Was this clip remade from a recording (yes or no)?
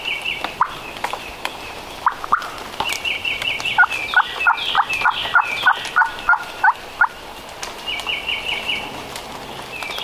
no